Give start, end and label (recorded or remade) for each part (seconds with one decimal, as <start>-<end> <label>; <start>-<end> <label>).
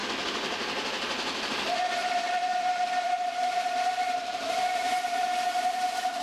0.0-2.5 recorded; 2.5-6.2 remade